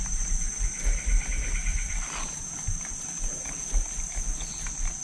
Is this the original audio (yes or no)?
yes